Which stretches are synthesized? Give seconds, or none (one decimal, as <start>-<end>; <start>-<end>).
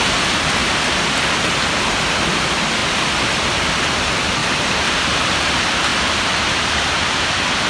2.8-3.3; 4.4-5.5; 5.9-7.3